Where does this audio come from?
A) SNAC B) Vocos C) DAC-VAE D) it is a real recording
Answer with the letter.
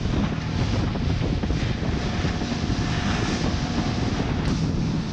D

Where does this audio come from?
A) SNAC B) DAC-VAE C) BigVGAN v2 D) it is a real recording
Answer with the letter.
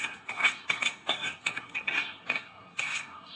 A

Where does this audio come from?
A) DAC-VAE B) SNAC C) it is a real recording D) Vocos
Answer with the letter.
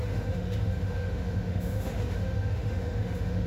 A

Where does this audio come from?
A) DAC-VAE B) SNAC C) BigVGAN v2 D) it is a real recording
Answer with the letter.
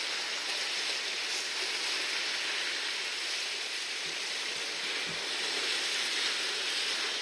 D